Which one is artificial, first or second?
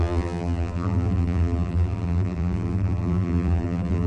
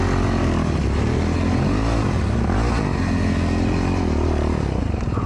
first